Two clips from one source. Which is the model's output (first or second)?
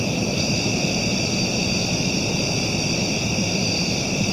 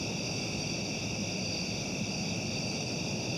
first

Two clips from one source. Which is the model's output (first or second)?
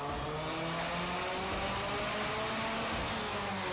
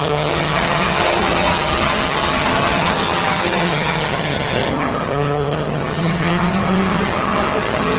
second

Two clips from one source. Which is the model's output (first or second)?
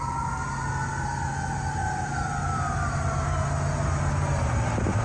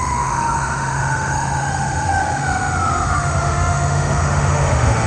second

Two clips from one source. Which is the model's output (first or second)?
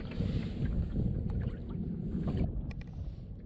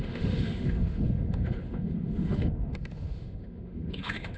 second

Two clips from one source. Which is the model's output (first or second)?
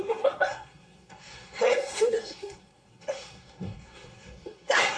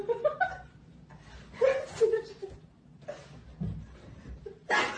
first